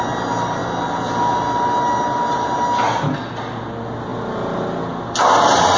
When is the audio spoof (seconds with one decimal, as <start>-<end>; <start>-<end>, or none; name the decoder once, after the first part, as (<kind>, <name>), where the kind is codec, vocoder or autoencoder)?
none